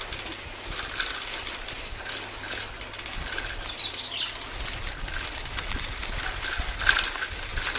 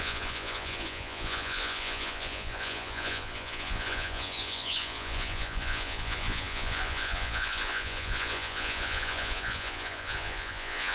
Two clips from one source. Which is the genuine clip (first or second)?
first